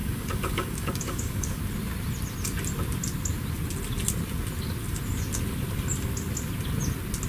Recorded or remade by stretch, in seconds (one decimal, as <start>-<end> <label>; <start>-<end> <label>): 0.0-1.6 remade; 1.6-7.3 recorded